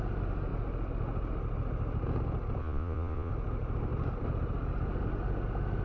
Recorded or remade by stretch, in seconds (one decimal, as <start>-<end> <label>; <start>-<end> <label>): 0.0-2.6 recorded; 2.6-3.3 remade; 3.3-5.8 recorded